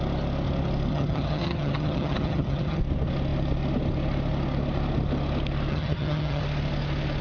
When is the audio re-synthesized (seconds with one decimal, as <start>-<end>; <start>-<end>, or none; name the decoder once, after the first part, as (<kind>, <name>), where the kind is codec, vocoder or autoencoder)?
0.9-2.8 (vocoder, HiFi-GAN); 5.7-6.4